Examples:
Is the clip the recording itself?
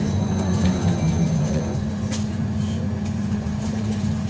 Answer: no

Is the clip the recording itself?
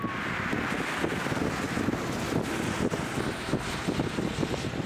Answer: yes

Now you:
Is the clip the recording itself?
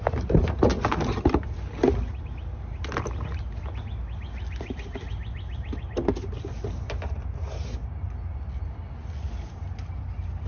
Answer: yes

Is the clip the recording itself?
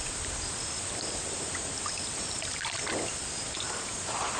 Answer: yes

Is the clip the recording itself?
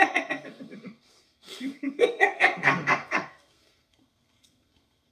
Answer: no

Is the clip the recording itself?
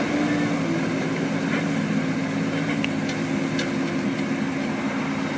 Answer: yes